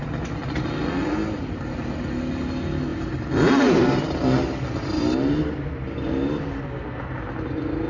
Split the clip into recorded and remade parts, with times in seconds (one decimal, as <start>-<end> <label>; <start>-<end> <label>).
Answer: 0.0-7.9 recorded